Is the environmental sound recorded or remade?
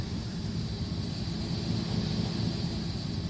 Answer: recorded